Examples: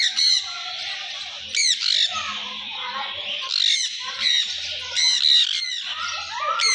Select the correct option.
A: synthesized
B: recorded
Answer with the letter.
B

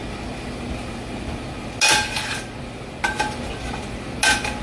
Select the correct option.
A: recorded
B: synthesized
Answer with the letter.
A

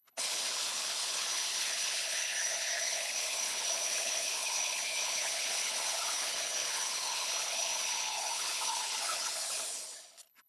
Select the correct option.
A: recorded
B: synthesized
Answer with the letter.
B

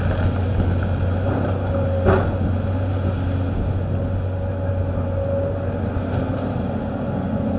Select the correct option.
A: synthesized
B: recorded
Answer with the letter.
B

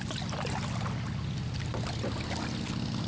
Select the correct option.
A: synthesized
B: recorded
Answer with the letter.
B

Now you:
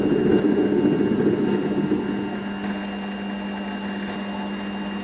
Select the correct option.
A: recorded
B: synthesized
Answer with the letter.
A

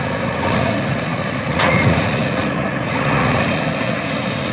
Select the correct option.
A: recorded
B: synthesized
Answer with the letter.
B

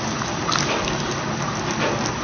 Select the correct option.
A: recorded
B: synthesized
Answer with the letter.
A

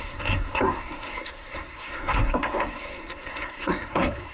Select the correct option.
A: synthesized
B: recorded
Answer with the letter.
A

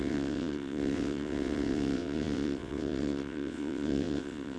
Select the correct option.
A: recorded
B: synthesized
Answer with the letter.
B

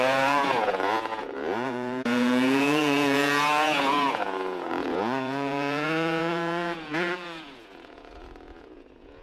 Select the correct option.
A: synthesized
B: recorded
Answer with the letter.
A